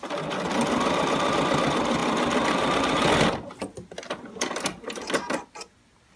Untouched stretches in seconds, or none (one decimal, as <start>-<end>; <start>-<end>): 0.0-6.2